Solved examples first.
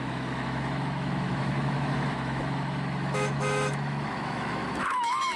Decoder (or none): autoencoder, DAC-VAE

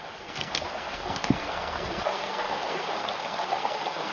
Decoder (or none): codec, SNAC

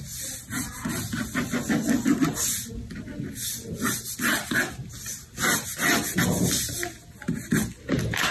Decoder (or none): none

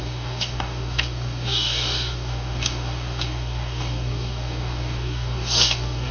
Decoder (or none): codec, DAC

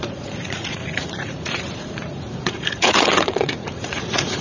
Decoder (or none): vocoder, Vocos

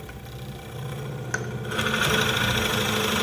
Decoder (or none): none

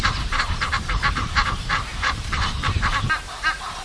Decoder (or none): vocoder, BigVGAN v2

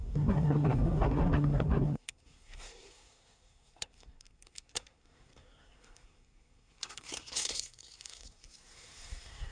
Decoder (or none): codec, SNAC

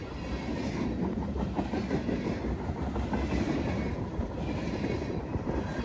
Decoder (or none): none